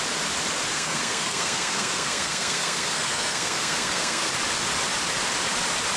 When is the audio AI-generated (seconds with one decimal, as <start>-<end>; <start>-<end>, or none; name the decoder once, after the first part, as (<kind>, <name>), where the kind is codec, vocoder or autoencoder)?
0.7-4.3 (codec, SNAC)

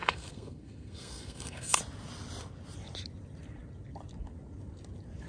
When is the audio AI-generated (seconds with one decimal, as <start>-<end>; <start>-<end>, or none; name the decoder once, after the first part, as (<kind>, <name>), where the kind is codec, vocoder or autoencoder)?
0.0-1.8 (codec, SNAC)

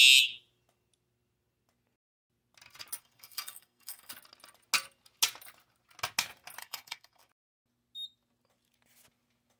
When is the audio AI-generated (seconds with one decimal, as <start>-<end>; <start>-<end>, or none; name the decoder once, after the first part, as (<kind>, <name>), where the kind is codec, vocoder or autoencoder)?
3.0-4.1 (codec, SNAC); 6.6-7.3

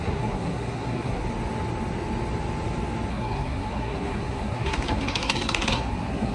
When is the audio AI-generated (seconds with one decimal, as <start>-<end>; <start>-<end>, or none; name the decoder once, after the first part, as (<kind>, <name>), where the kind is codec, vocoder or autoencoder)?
0.0-1.2 (codec, SNAC); 3.1-6.3

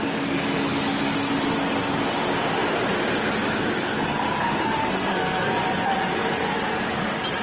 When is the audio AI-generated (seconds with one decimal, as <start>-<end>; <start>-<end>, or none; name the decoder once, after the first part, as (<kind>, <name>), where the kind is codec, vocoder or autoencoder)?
4.8-5.5 (codec, SNAC)

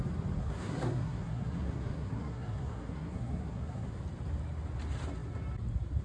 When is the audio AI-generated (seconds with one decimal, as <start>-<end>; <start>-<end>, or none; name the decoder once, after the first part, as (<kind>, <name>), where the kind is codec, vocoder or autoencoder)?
0.4-4.0 (codec, SNAC)

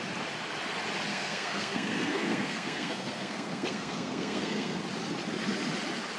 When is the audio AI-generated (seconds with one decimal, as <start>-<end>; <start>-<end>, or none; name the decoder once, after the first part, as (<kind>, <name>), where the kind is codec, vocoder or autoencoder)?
1.1-4.8 (codec, SNAC)